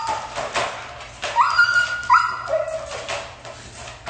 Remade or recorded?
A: recorded